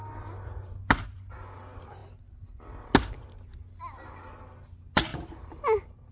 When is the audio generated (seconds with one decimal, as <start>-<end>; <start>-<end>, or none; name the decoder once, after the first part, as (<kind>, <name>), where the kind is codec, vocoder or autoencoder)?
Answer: 0.0-0.7 (vocoder, BigVGAN v2); 5.1-5.6